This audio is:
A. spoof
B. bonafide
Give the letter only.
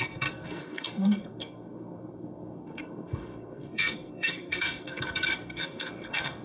A